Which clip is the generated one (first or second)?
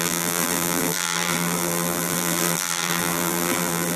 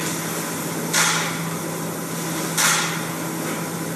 first